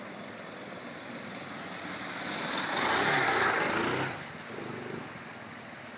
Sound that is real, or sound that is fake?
real